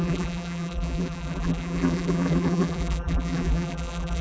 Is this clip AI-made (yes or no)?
yes